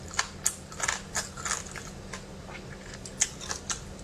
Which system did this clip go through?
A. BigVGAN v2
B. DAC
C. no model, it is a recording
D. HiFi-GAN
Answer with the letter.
C